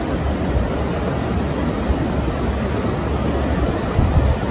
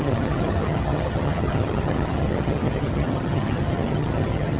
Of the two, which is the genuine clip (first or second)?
first